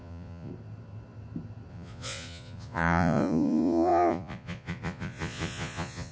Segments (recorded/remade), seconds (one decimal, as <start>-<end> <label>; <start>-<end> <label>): 0.0-0.5 remade; 0.5-1.7 recorded; 1.7-6.1 remade